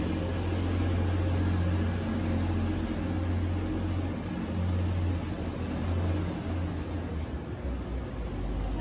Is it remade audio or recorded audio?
recorded